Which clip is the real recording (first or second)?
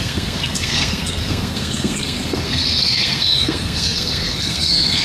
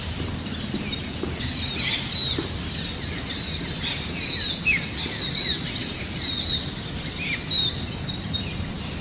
second